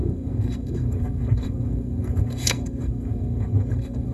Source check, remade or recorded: remade